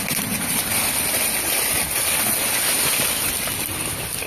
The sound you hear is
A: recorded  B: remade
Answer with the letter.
A